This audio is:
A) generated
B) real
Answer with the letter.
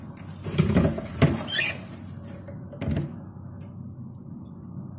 B